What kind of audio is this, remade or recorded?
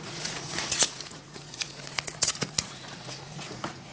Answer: remade